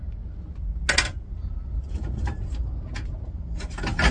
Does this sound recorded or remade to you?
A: recorded